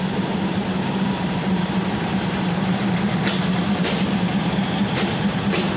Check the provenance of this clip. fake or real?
fake